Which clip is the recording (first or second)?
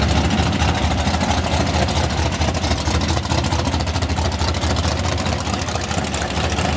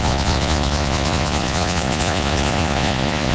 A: first